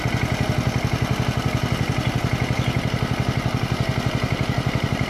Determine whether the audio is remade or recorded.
recorded